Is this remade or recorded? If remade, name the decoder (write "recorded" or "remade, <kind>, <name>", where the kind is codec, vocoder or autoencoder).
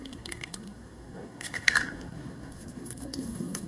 remade, codec, SNAC